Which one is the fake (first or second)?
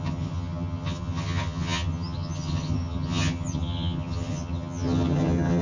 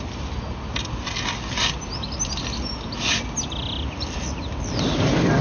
first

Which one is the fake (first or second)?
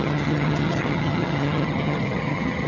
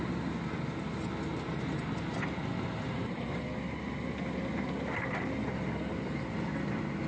first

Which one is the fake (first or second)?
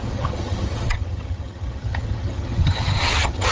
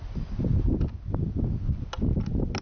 first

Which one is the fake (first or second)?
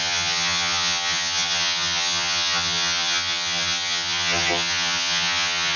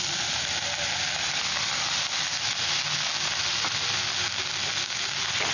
first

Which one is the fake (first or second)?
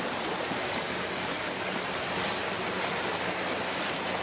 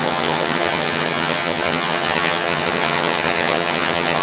second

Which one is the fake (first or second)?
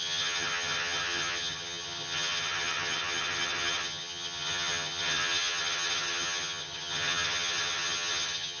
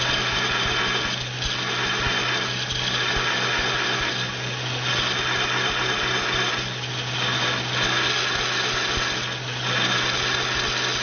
first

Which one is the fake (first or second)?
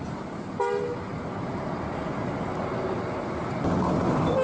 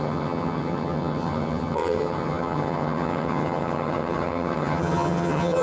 second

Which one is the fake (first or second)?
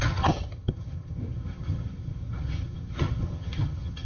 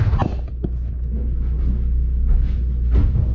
first